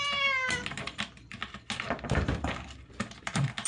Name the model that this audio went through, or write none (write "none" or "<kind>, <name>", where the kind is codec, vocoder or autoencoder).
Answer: none